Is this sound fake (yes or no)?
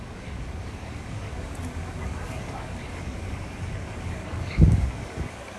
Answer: yes